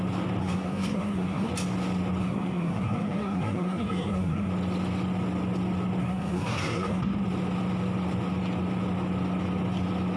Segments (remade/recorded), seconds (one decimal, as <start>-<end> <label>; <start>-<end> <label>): 0.0-0.4 recorded; 0.4-1.5 remade; 1.5-2.2 recorded; 2.2-4.5 remade; 4.5-6.0 recorded; 6.0-7.0 remade; 7.0-10.2 recorded